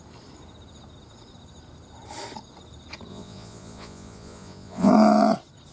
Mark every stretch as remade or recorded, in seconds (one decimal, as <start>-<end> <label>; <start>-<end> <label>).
0.0-3.1 recorded; 3.1-4.9 remade; 4.9-5.7 recorded